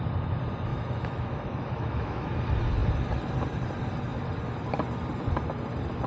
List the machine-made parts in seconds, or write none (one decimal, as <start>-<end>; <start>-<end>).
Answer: 0.7-2.3